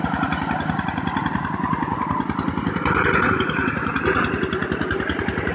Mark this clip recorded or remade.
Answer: recorded